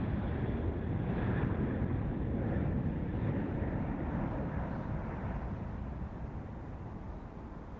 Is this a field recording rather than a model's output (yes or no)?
yes